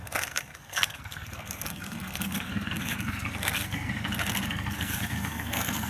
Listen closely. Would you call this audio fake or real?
fake